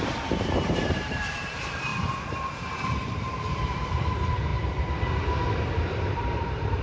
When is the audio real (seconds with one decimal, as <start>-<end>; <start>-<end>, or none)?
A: 4.5-6.0